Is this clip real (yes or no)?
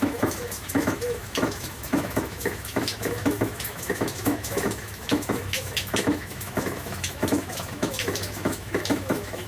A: no